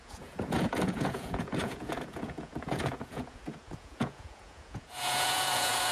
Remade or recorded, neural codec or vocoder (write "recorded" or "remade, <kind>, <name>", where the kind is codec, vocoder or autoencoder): remade, vocoder, Vocos